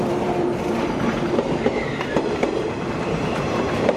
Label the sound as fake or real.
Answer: fake